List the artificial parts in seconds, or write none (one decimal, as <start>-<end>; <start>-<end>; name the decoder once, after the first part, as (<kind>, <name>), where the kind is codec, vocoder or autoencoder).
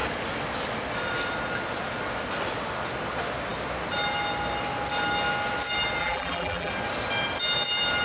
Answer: 6.0-6.7 (vocoder, BigVGAN v2)